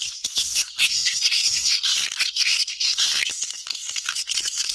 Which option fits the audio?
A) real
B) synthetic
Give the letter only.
B